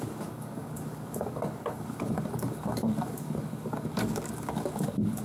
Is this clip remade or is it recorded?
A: remade